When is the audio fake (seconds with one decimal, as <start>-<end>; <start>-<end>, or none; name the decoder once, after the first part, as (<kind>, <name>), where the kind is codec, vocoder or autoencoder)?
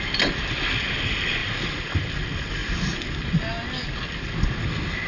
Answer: 2.6-3.3 (vocoder, BigVGAN v2)